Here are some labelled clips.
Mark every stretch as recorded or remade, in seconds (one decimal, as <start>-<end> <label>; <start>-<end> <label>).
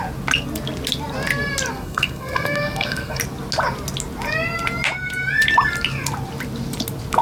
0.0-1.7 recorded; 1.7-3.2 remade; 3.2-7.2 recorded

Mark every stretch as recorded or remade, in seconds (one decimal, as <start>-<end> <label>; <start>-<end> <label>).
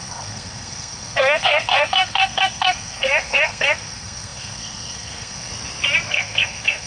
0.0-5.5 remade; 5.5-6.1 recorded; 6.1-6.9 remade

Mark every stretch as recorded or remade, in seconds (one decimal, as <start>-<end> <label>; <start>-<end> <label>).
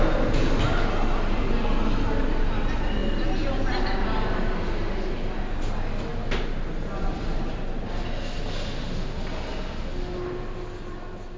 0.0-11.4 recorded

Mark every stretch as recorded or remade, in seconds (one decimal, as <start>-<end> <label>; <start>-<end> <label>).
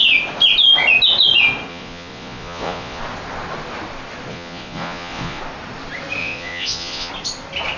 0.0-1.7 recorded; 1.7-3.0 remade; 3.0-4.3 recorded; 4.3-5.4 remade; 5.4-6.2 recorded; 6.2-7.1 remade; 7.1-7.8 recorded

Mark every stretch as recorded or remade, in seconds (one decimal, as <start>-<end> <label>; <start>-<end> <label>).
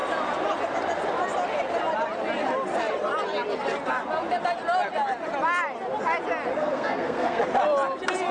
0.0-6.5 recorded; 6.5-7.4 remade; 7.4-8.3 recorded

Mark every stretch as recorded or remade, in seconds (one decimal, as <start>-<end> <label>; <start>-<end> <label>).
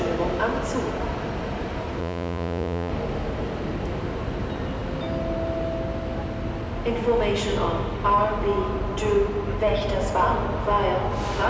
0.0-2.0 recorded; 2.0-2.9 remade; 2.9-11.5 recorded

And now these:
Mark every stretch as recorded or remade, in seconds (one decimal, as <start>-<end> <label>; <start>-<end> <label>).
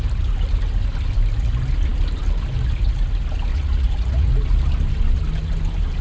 0.0-3.5 recorded; 3.5-4.3 remade; 4.3-6.0 recorded